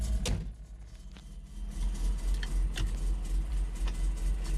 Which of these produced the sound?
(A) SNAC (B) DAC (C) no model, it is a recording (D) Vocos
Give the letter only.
C